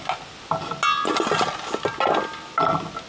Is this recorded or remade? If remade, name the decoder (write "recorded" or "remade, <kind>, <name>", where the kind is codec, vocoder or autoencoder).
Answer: recorded